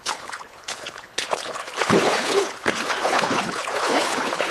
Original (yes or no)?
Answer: no